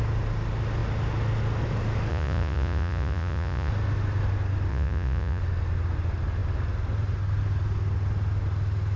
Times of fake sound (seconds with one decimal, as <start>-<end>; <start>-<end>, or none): 2.1-3.7; 4.7-5.4